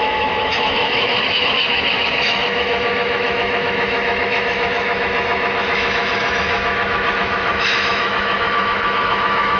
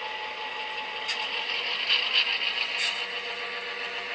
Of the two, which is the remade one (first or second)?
first